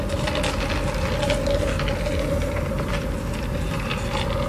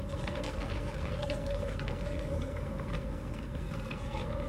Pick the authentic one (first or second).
first